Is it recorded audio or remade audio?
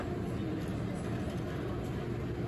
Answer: recorded